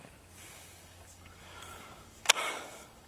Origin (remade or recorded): remade